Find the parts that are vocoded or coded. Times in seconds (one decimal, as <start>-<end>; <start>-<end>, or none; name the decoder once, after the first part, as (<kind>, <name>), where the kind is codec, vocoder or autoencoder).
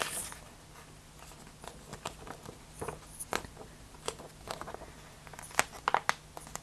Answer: none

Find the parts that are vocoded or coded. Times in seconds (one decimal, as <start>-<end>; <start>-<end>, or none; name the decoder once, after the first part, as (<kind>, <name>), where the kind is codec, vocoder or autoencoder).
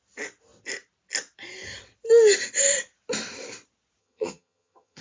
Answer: 4.0-5.0 (vocoder, HiFi-GAN)